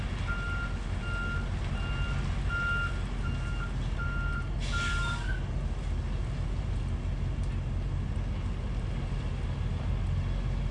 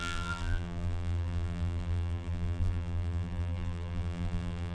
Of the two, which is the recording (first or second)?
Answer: first